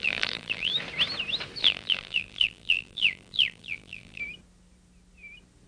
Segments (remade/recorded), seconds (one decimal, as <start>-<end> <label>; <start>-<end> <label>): 0.0-0.7 remade; 0.7-1.6 recorded; 1.6-4.2 remade; 4.2-5.7 recorded